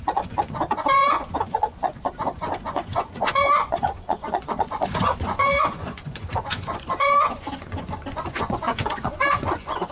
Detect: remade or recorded remade